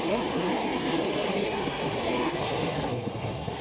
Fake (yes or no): yes